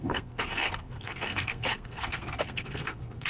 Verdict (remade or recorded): remade